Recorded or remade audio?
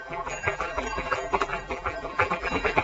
remade